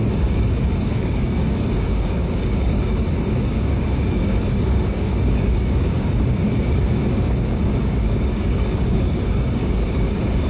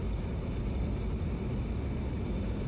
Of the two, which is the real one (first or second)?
second